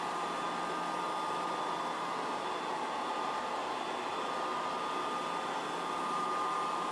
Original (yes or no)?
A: yes